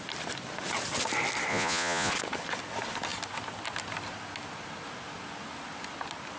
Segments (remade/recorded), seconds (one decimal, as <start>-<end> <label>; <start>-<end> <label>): 0.0-1.5 recorded; 1.5-2.1 remade; 2.1-6.4 recorded